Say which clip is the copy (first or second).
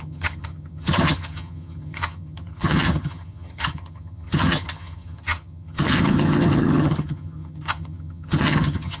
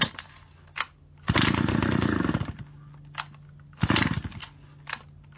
first